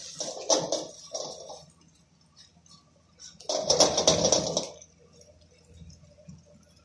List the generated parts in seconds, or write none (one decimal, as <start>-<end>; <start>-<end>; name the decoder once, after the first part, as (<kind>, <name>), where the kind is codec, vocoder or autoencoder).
none